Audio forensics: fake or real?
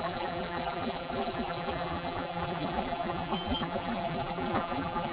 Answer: fake